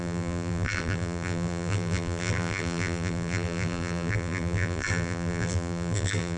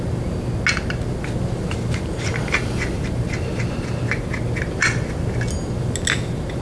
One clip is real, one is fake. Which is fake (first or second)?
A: first